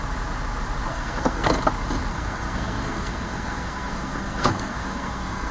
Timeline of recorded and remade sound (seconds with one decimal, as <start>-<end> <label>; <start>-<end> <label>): 0.0-0.9 recorded; 0.9-1.6 remade; 1.6-2.1 recorded; 2.1-5.5 remade